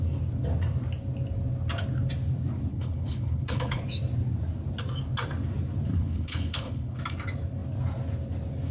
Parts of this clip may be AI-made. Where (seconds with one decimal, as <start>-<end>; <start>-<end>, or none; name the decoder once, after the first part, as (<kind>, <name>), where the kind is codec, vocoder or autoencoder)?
2.7-3.8 (codec, HILCodec); 5.9-7.0